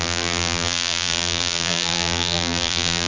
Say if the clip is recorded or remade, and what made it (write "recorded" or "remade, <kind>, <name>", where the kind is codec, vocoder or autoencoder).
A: remade, vocoder, BigVGAN v2